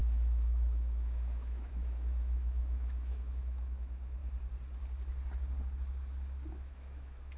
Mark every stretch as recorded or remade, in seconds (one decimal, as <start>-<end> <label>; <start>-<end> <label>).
0.0-4.2 remade; 4.2-6.5 recorded; 6.5-7.4 remade